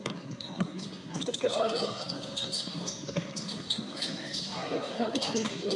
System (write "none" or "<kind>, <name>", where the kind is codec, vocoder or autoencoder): codec, SNAC